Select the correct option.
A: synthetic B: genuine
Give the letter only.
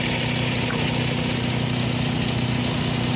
B